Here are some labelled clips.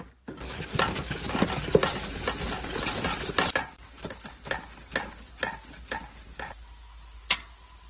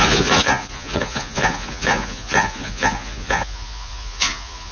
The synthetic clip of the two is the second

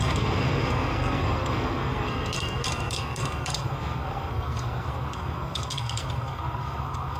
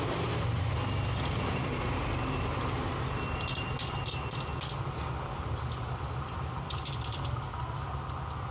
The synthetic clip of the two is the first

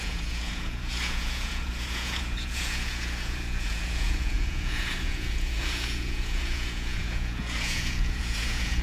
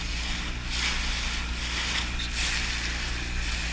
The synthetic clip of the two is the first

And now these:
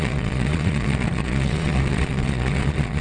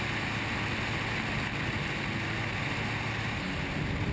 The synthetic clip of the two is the first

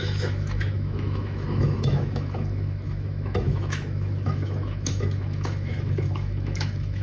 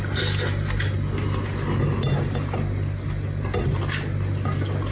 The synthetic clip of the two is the first